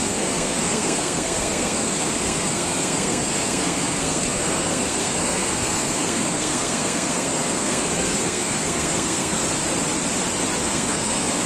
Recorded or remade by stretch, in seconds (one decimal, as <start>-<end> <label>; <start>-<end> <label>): 0.0-9.4 remade; 9.4-10.6 recorded; 10.6-11.5 remade